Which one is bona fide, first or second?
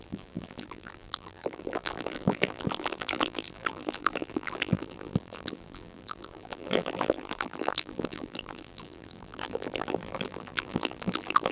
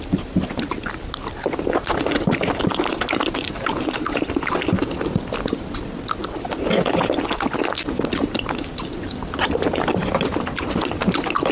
second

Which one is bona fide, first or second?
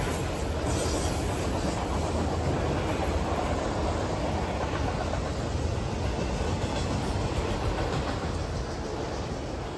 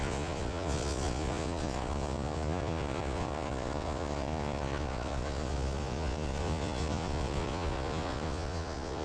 first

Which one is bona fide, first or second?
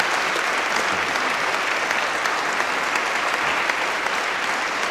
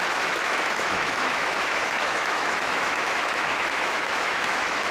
first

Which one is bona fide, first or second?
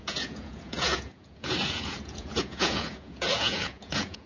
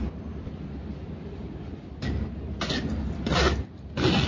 second